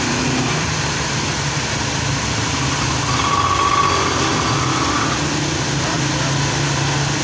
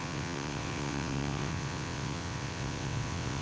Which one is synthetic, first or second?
second